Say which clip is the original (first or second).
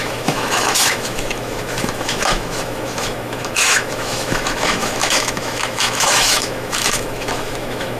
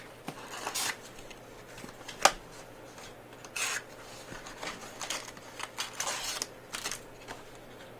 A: second